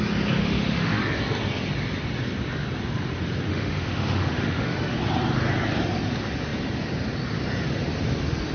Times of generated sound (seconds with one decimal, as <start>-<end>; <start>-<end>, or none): 0.4-1.0; 3.5-5.0